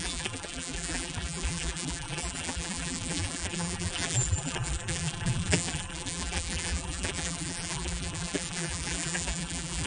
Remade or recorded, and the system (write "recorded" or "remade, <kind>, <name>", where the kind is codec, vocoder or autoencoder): remade, vocoder, BigVGAN v2